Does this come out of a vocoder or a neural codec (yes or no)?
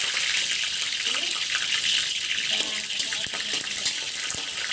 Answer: no